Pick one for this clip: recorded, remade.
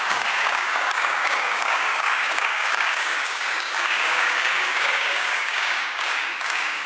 remade